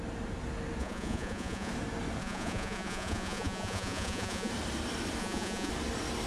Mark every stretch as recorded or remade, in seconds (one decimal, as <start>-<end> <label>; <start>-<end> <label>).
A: 0.0-0.8 recorded; 0.8-1.7 remade; 1.7-2.2 recorded; 2.2-4.5 remade; 4.5-5.2 recorded; 5.2-5.7 remade; 5.7-6.3 recorded